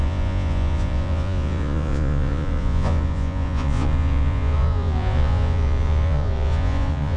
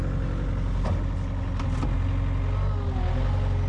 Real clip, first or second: second